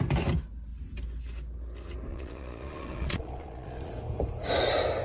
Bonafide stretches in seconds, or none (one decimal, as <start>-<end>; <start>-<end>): 0.0-2.1; 3.9-5.0